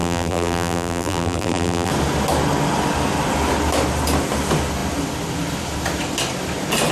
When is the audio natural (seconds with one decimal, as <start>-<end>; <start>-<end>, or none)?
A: 1.9-6.9